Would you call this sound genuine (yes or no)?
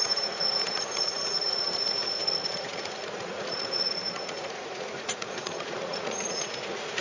no